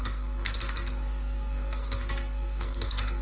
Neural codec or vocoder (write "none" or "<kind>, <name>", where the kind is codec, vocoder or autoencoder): codec, SNAC